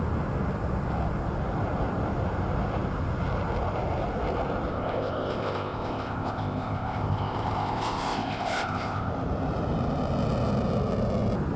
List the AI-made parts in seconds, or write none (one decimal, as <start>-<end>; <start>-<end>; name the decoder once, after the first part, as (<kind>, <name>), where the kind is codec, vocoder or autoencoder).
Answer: 4.7-9.1 (codec, ZipCodec)